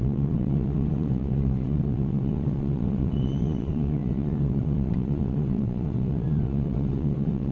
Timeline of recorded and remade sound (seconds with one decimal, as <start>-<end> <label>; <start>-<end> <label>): 0.0-7.5 remade